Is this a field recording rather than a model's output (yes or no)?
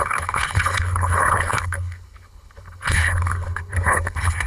no